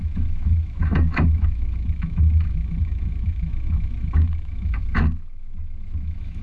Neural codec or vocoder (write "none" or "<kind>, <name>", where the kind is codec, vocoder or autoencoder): autoencoder, DAC-VAE